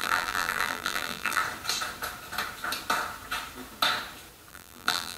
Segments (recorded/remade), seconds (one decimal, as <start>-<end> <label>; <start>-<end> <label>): 0.0-1.4 remade; 1.4-4.5 recorded; 4.5-5.2 remade